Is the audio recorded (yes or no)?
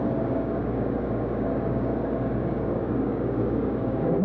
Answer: no